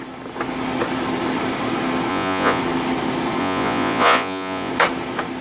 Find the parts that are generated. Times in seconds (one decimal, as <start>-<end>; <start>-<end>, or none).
2.1-2.6; 3.4-4.7